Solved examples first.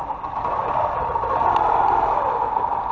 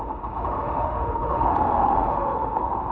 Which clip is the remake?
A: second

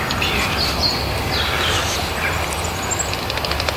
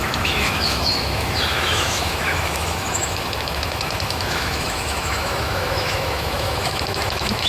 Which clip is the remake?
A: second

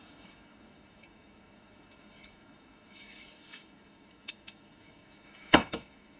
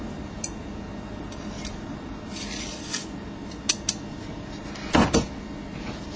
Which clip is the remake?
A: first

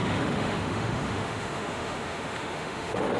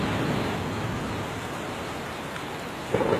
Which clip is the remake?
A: first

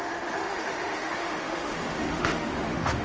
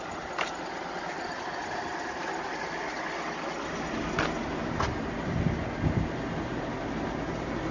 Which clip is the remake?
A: first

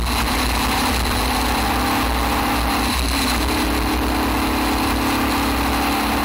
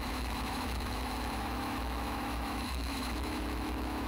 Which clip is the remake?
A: second